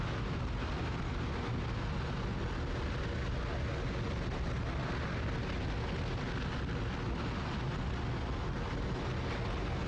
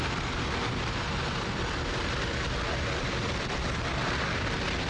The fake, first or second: second